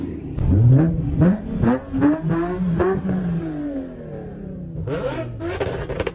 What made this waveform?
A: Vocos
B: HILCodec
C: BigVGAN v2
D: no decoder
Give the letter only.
C